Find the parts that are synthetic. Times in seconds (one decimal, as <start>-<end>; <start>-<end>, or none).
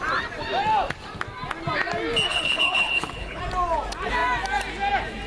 2.3-3.4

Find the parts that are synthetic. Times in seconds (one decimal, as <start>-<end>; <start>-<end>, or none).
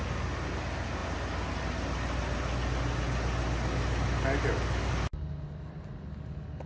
none